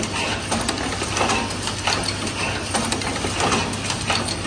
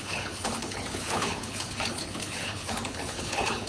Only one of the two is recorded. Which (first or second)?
first